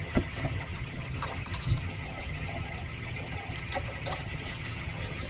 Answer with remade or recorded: remade